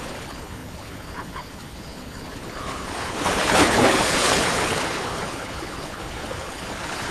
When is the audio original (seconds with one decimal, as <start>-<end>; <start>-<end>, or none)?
none